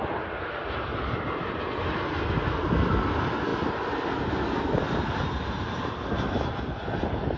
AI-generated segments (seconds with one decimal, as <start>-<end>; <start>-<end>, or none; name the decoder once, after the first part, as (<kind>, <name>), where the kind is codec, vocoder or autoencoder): none